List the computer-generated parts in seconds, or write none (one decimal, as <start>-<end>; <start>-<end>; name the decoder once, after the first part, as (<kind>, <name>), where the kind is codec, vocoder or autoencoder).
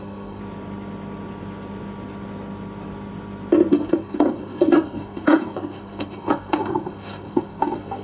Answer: 0.0-0.4 (codec, SNAC); 3.7-8.0